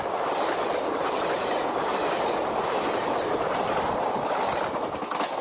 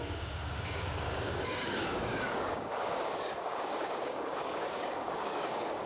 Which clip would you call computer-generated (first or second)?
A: second